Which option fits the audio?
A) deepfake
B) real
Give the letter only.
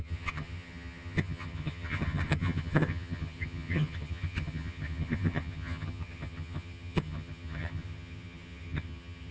A